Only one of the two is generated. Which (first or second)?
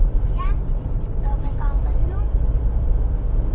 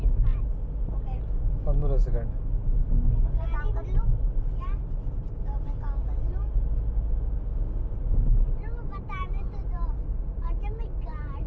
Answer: first